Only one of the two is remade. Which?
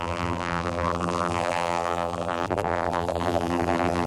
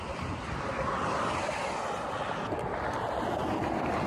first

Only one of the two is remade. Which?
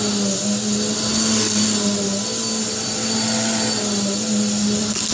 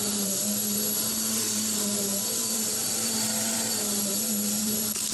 second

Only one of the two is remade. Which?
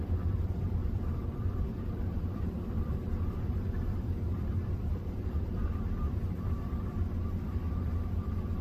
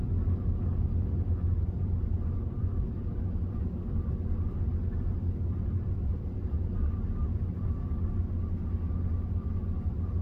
first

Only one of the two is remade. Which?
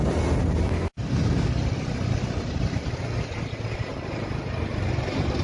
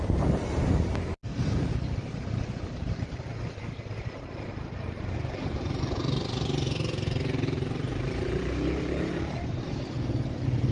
second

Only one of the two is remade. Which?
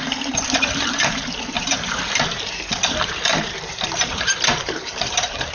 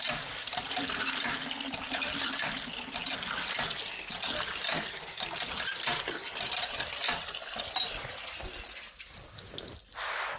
first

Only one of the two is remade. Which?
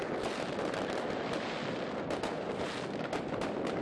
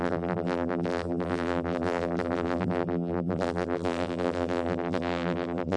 second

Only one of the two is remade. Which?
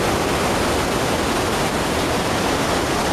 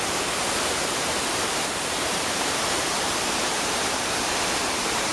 second